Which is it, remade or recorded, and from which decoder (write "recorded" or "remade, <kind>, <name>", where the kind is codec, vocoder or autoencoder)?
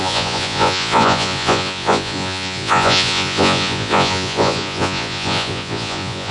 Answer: remade, vocoder, Vocos